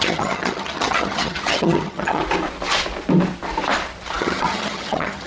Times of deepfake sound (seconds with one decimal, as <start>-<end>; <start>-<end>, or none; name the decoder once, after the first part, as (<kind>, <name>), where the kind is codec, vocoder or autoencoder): 0.0-2.2 (vocoder, HiFi-GAN); 4.2-5.3